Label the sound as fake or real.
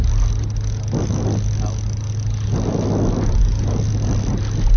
real